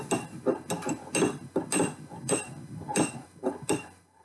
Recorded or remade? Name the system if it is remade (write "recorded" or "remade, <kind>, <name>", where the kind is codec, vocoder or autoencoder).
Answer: remade, vocoder, BigVGAN v2